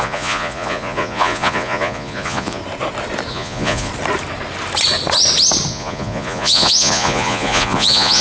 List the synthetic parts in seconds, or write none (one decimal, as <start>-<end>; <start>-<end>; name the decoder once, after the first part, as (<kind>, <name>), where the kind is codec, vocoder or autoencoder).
0.0-2.6 (vocoder, Vocos); 3.3-3.9; 5.7-8.2